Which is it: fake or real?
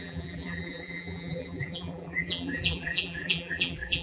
fake